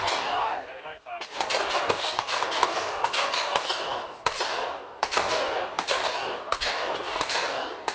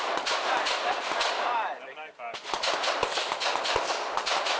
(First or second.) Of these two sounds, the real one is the second